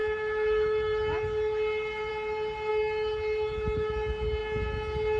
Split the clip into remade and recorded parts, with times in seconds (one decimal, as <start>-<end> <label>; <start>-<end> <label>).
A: 0.0-2.1 remade; 2.1-2.7 recorded; 2.7-3.9 remade; 3.9-5.2 recorded